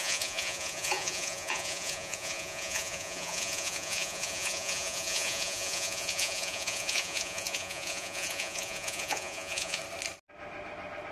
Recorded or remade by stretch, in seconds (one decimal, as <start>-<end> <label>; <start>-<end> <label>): 0.0-9.8 remade; 9.8-11.1 recorded